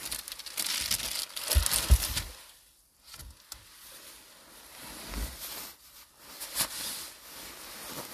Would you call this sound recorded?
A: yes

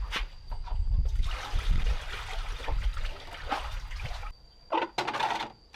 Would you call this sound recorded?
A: yes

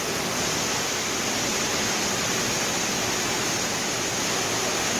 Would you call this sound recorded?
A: yes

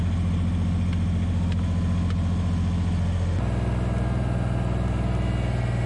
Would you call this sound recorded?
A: yes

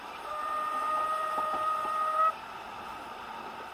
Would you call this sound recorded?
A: yes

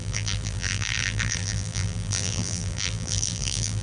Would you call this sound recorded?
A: no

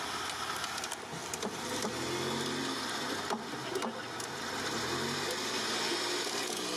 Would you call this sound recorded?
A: yes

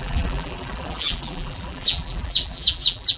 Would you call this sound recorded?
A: no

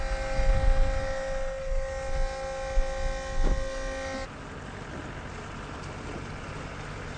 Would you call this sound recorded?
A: yes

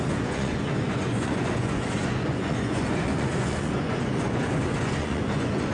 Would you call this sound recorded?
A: no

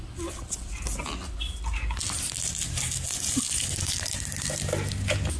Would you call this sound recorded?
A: yes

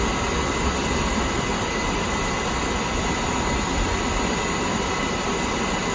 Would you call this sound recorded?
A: yes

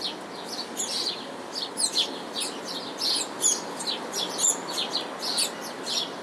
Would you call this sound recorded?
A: yes